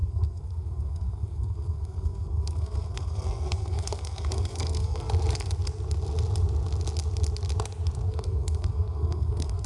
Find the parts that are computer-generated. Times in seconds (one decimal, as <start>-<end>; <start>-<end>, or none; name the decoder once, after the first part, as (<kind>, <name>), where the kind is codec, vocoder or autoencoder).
0.0-5.1 (codec, SNAC); 8.1-9.7